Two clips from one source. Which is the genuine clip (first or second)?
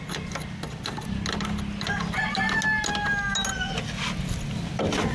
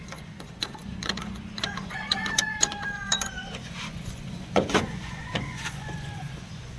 first